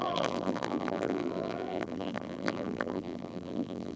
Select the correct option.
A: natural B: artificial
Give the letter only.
B